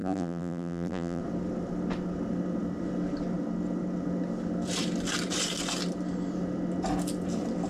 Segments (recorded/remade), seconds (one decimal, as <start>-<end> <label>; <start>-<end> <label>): 0.0-1.2 remade; 1.2-7.7 recorded